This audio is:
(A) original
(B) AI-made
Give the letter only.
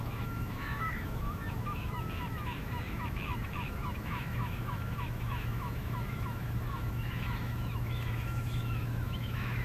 B